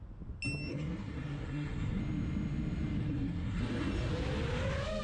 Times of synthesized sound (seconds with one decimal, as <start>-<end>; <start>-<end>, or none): 0.7-2.0; 3.0-4.1